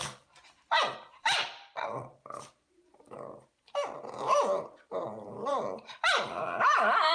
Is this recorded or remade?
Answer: remade